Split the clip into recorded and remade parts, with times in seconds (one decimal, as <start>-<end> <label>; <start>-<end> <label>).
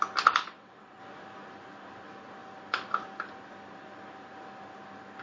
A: 0.0-0.4 recorded; 0.4-1.0 remade; 1.0-5.2 recorded